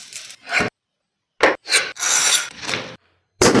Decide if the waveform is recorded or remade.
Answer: recorded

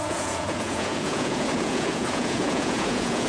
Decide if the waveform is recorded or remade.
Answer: remade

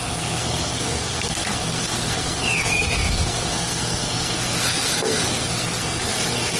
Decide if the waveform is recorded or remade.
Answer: remade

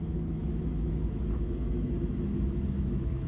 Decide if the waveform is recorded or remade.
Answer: remade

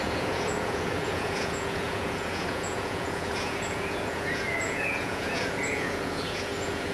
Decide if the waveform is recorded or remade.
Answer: remade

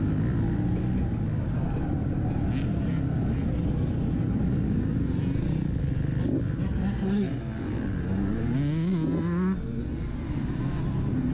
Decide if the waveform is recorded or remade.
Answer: recorded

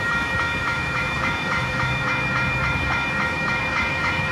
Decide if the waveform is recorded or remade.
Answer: remade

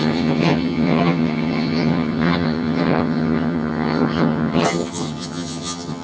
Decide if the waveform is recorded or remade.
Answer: remade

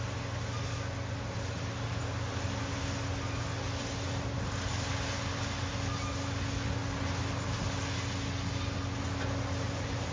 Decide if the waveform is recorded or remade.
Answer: recorded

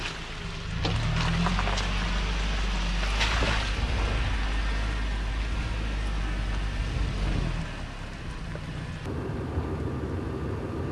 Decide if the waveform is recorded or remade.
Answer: recorded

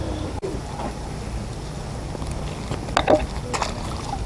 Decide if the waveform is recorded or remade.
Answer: recorded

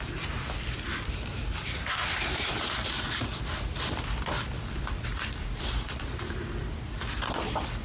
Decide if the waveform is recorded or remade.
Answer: remade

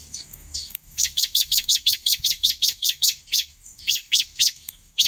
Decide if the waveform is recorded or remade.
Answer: remade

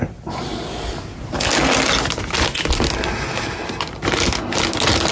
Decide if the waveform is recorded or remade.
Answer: recorded